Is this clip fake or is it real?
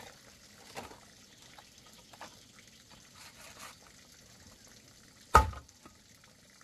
real